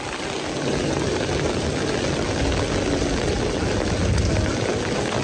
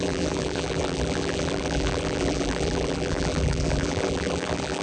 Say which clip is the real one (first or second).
first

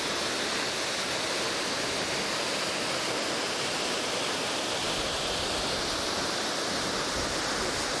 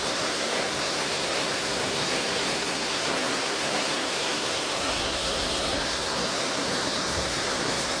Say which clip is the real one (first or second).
first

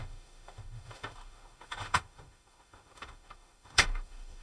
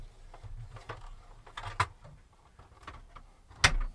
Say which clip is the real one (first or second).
second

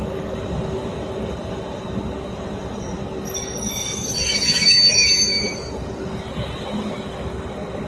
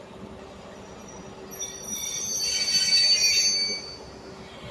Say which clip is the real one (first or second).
second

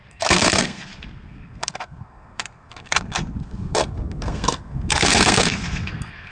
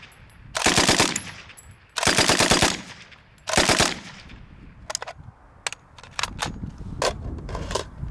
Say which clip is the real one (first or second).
second